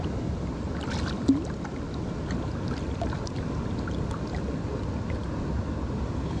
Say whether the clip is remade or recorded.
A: recorded